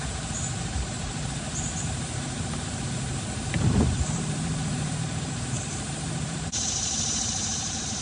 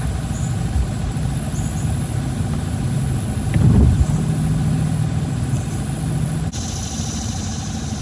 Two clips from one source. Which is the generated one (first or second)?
first